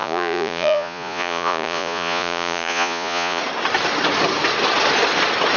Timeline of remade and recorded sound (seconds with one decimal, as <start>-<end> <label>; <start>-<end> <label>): 0.0-3.4 remade; 3.4-5.6 recorded